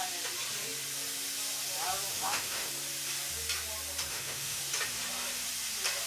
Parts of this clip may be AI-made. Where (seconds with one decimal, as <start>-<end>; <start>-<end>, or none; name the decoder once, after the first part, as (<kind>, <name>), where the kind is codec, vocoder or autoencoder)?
2.1-2.7 (autoencoder, DAC-VAE); 4.1-4.6